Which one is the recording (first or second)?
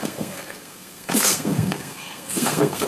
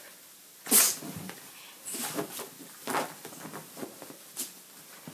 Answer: second